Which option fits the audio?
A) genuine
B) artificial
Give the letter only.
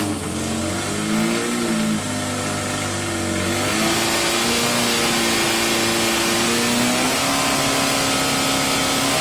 A